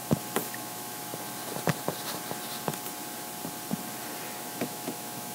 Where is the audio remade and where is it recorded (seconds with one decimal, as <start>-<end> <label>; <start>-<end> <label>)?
0.0-0.5 recorded; 0.5-1.1 remade; 1.1-4.3 recorded; 4.3-5.3 remade